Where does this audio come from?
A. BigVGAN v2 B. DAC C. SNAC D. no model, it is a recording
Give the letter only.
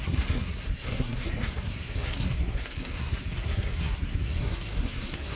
C